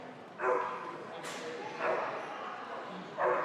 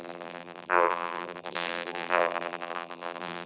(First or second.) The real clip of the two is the first